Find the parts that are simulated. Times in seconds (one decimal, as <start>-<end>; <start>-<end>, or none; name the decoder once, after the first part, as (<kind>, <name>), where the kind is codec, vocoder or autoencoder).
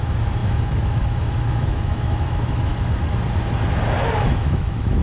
0.0-2.7 (autoencoder, DAC-VAE); 4.2-5.0